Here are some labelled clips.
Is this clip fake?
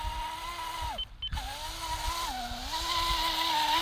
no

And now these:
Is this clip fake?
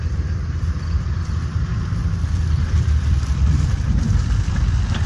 yes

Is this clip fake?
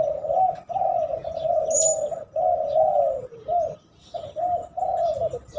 no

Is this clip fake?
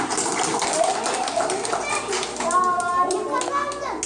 no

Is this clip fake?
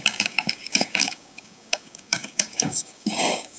yes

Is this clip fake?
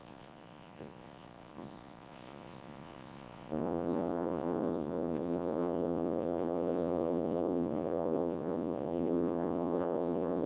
yes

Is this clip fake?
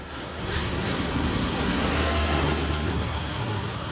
yes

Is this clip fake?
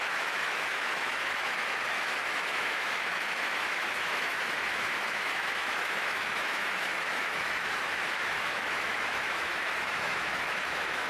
yes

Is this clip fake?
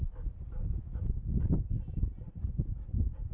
no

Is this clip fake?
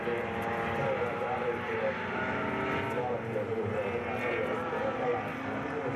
no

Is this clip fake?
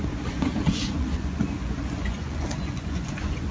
yes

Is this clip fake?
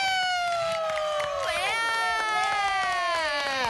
no